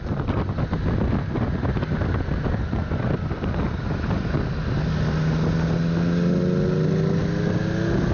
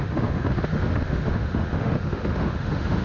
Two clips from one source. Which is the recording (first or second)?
first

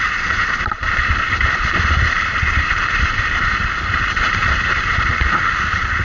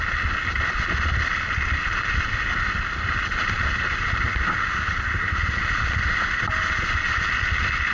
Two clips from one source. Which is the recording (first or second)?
second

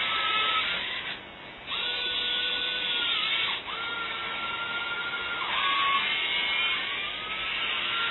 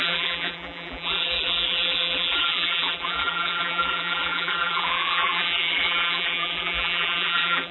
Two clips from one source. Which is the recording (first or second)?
first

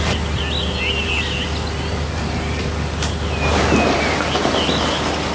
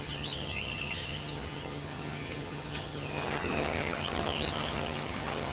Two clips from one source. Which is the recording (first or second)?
first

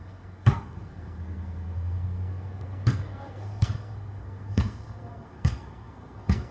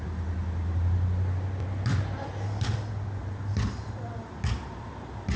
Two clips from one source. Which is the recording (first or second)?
second